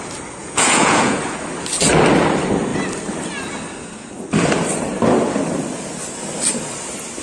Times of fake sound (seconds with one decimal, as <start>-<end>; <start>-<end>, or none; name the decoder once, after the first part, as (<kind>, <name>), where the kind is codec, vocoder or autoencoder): 0.4-1.2 (vocoder, Vocos)